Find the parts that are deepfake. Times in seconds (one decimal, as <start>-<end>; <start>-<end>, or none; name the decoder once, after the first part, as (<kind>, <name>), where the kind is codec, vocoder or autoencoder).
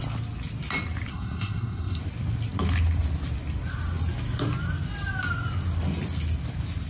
1.1-2.0 (codec, SNAC)